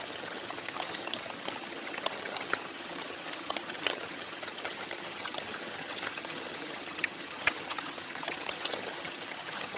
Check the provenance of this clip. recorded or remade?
remade